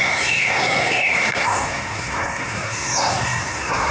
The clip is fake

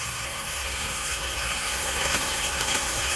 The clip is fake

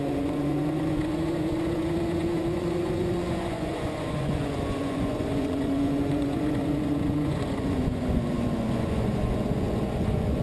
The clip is fake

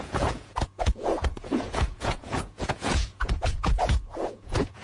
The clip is fake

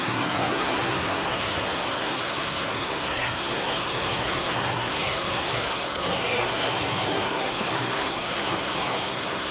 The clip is fake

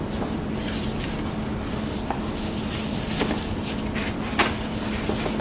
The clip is real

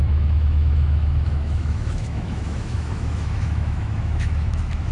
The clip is fake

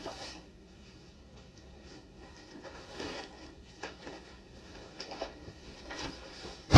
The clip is fake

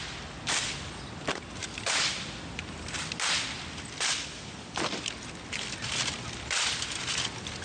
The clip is real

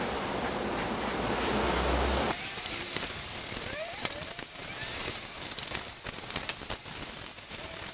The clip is real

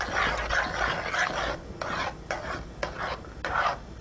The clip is real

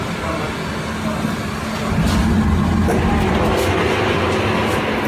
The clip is real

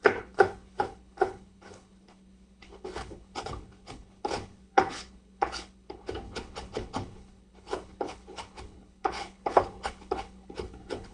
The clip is fake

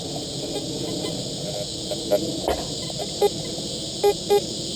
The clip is real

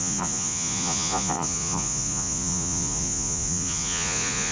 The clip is fake